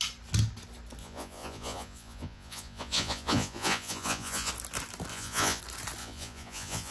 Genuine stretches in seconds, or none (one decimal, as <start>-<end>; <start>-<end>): 0.0-1.0; 4.5-5.1; 5.6-6.0